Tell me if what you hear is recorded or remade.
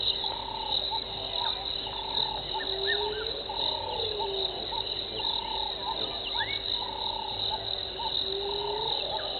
recorded